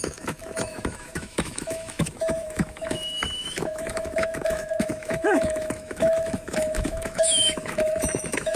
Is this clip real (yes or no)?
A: no